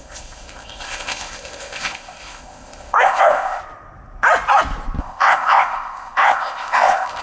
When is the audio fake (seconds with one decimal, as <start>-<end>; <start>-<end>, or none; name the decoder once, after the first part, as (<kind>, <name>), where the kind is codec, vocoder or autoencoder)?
0.0-3.6 (codec, ZipCodec); 5.0-7.2